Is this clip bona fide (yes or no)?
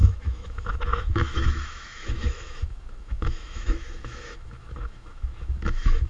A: no